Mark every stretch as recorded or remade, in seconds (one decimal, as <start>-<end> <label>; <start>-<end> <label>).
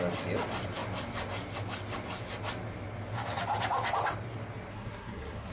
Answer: 0.0-4.7 recorded; 4.7-5.5 remade